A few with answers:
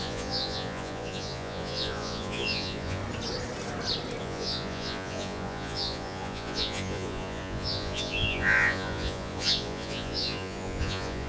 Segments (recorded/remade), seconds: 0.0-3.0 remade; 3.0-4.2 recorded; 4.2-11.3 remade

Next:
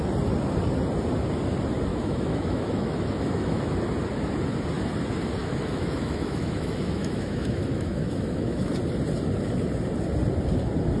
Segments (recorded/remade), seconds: 0.0-1.9 recorded; 1.9-3.6 remade; 3.6-5.4 recorded; 5.4-8.7 remade; 8.7-11.0 recorded

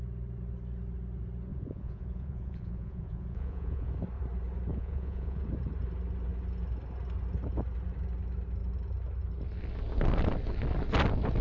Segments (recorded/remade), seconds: 0.0-1.5 recorded; 1.5-3.9 remade; 3.9-4.7 recorded; 4.7-5.4 remade; 5.4-11.4 recorded

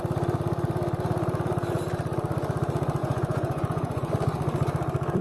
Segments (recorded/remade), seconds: 0.0-3.0 recorded; 3.0-4.1 remade; 4.1-5.2 recorded

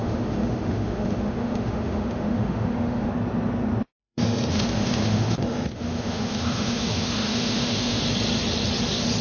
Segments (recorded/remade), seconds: 0.0-3.1 remade; 3.1-4.0 recorded; 4.0-8.0 remade; 8.0-9.2 recorded

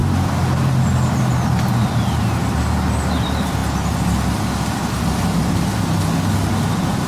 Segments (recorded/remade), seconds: 0.0-7.1 recorded

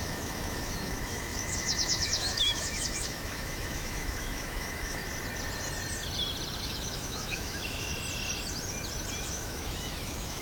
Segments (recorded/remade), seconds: 0.0-5.0 remade; 5.0-6.6 recorded; 6.6-7.9 remade; 7.9-9.2 recorded; 9.2-10.4 remade

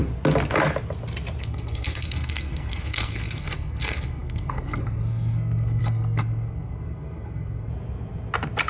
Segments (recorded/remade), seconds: 0.0-1.4 recorded; 1.4-7.7 remade; 7.7-8.7 recorded